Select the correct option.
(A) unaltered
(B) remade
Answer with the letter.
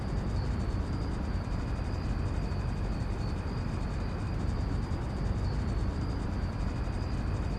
B